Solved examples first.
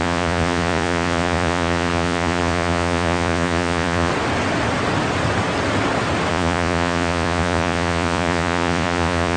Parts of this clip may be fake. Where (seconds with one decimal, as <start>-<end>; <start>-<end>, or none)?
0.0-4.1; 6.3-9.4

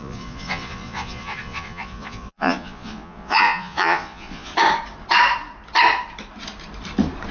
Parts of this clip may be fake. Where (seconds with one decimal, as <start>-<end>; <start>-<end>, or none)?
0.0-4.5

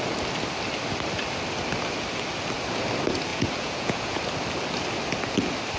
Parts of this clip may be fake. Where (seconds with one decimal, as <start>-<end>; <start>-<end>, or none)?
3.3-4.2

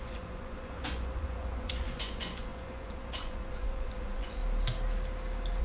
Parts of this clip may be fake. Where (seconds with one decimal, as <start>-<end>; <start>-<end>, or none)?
0.0-4.4

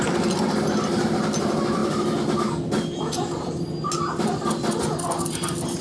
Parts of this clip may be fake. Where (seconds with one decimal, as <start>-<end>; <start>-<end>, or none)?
none

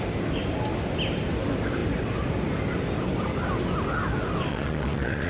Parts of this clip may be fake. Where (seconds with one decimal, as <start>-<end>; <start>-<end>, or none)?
4.5-5.3